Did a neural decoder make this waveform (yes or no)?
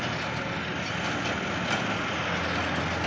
no